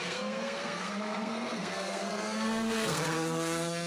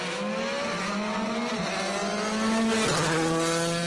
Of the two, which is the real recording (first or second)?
second